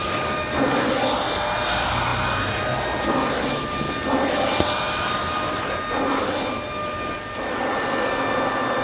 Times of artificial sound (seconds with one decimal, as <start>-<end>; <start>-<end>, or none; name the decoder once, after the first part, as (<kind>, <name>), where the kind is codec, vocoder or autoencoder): none